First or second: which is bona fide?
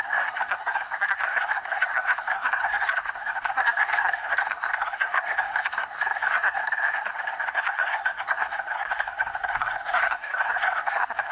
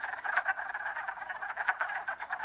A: second